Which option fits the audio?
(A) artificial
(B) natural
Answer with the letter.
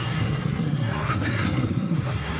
A